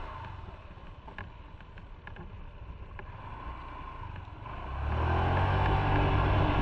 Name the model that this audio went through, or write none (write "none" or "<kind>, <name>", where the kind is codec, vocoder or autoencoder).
none